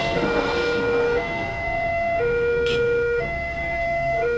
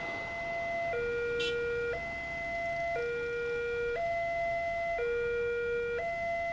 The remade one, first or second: first